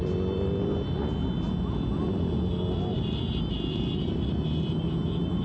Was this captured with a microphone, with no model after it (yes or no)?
yes